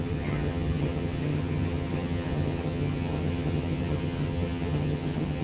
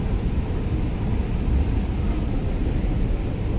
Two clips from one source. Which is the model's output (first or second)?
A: first